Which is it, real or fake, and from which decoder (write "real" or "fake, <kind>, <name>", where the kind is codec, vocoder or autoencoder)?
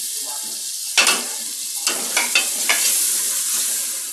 real